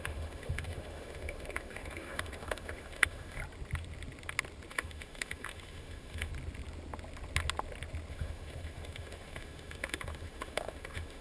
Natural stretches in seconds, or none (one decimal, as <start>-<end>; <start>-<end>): 3.4-4.7; 6.3-8.1